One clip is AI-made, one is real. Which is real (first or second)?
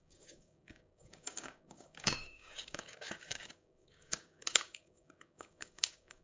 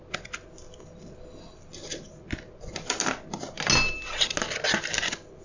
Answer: second